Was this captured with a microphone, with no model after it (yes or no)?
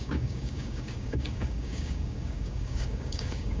no